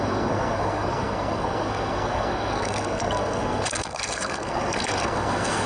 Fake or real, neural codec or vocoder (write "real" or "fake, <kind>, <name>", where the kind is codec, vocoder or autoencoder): fake, codec, SNAC